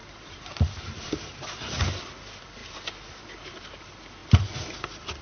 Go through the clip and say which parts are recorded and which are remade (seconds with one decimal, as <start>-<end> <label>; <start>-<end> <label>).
0.0-2.1 remade; 2.1-5.2 recorded